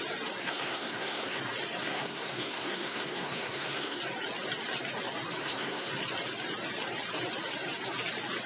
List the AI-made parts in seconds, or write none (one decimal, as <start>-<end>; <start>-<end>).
0.4-1.4; 1.8-4.0; 5.4-5.9